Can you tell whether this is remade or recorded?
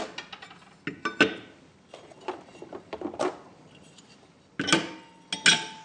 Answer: recorded